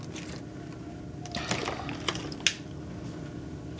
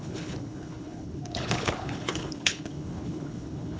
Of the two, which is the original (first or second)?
first